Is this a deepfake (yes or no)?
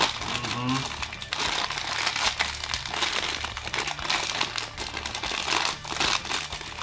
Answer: no